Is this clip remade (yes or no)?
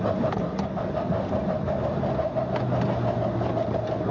no